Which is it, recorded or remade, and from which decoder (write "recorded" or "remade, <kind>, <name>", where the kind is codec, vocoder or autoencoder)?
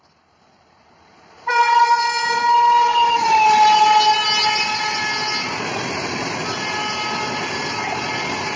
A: recorded